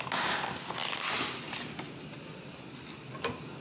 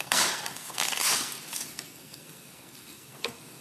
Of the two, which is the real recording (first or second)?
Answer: first